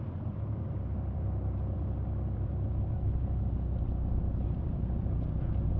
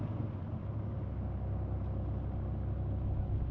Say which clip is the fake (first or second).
first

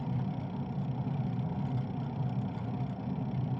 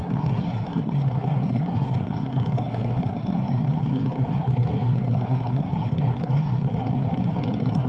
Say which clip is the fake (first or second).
second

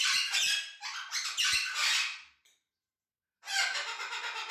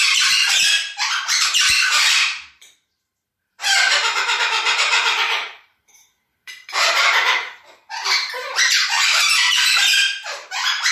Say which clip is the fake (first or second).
second